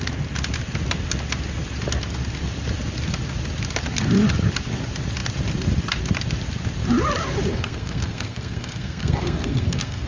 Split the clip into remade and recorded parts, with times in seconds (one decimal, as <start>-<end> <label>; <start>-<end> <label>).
0.0-7.5 recorded; 7.5-10.1 remade